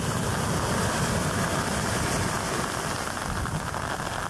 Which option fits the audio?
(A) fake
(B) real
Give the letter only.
B